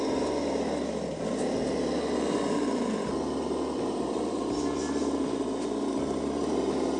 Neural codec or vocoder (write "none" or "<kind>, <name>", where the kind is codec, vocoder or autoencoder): none